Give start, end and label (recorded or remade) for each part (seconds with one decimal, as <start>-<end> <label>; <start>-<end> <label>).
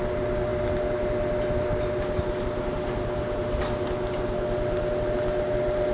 0.0-5.9 recorded